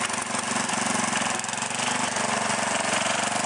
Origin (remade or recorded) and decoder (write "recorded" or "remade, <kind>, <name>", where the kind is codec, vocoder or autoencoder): recorded